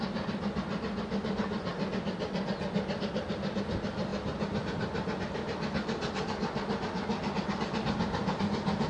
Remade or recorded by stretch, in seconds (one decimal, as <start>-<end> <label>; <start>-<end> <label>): 0.0-8.9 recorded